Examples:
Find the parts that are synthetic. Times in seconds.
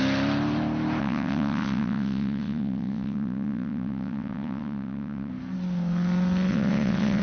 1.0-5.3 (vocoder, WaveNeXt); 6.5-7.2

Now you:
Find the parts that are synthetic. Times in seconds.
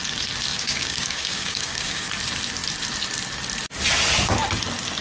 0.5-2.1 (codec, DAC)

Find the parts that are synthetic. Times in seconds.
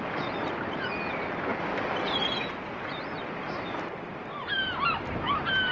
none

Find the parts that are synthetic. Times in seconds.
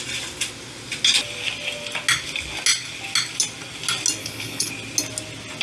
4.2-4.7 (codec, HILCodec)